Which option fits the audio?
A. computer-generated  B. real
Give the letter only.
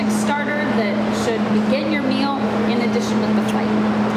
B